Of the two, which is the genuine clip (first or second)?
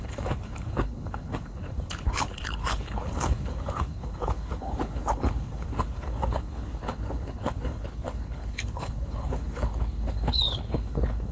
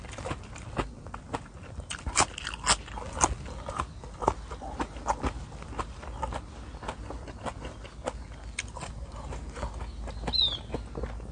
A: second